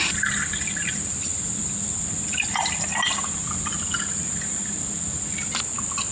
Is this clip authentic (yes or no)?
yes